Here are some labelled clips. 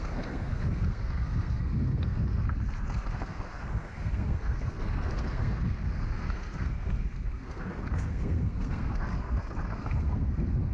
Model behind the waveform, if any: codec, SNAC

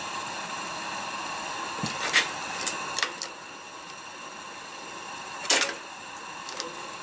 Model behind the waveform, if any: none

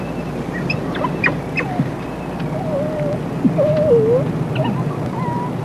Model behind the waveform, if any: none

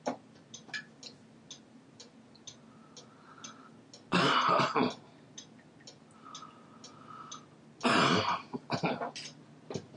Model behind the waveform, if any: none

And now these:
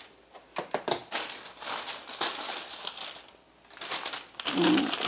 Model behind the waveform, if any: none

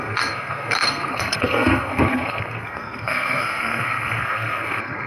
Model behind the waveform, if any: codec, SNAC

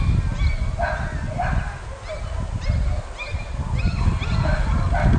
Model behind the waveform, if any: none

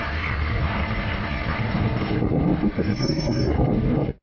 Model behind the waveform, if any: codec, SNAC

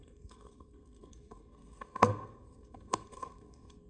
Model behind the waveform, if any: codec, SNAC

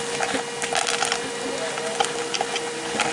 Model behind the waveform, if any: none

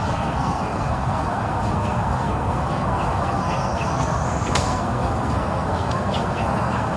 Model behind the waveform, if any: codec, SNAC